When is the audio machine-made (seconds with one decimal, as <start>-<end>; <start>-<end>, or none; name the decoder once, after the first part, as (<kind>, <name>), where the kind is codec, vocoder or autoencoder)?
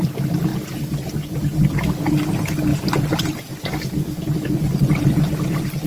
2.7-3.6 (vocoder, BigVGAN v2)